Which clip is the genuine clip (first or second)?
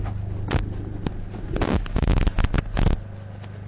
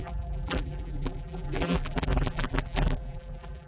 first